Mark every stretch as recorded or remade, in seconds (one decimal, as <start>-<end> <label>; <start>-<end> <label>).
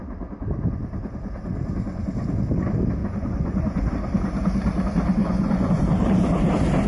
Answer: 0.0-3.0 recorded; 3.0-3.9 remade; 3.9-5.2 recorded; 5.2-5.8 remade; 5.8-6.9 recorded